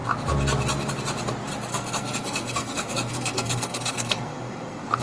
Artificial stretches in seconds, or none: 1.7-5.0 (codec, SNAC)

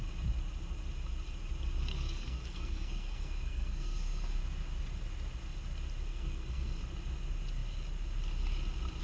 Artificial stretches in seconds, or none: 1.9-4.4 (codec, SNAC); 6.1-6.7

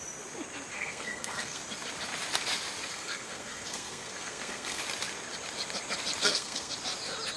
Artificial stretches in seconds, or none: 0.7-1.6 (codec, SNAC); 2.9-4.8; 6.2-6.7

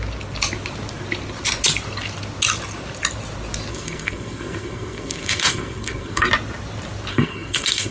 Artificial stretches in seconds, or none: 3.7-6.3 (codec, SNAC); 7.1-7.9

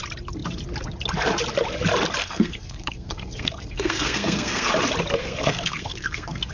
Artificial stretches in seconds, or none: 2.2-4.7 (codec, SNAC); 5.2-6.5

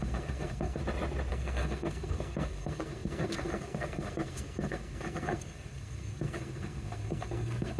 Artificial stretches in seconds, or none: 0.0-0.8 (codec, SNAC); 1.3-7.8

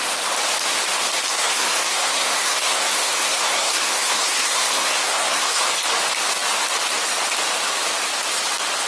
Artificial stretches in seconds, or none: 1.4-5.6 (codec, SNAC)

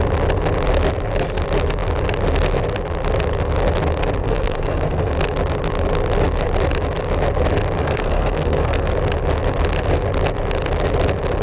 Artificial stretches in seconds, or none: 4.2-5.1 (codec, SNAC); 7.8-8.9